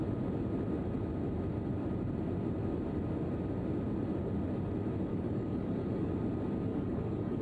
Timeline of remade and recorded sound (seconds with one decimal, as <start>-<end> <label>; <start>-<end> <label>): 0.0-5.1 recorded; 5.1-6.1 remade; 6.1-6.7 recorded; 6.7-7.4 remade